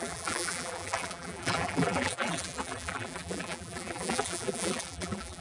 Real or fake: fake